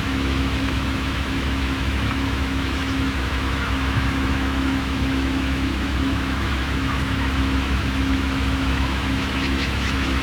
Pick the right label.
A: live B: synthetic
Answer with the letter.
B